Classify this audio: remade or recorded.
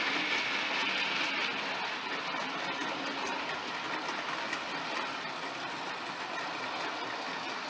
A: recorded